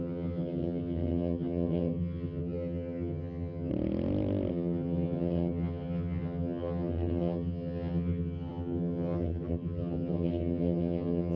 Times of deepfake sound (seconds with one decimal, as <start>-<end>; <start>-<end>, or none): 0.0-3.7; 4.5-11.4